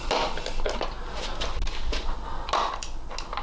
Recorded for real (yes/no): yes